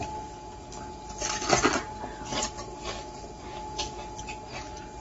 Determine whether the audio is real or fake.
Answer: real